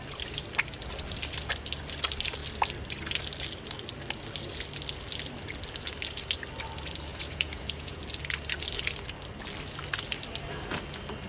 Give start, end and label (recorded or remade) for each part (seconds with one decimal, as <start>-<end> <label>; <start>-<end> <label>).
0.0-7.1 recorded; 7.1-8.0 remade; 8.0-11.3 recorded